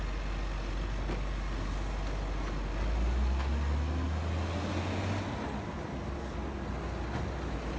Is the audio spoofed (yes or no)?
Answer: no